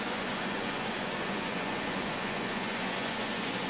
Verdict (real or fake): fake